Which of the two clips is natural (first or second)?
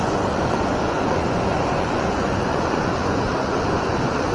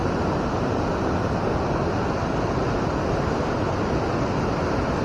second